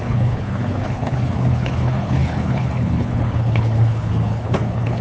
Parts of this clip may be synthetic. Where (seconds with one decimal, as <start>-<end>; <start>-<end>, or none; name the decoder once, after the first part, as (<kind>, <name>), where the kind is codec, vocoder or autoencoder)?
0.0-5.0 (codec, HILCodec)